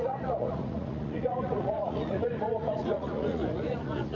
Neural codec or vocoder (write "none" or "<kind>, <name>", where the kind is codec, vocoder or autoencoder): vocoder, Vocos